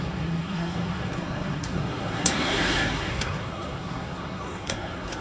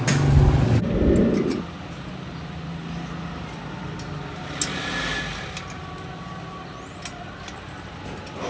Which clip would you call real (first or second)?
second